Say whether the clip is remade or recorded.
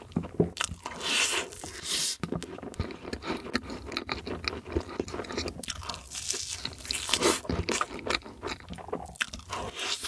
recorded